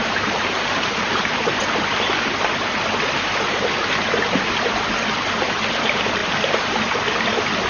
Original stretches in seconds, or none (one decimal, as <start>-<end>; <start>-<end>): 1.6-7.7